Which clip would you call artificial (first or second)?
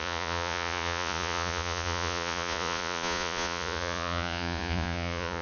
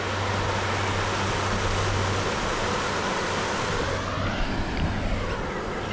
first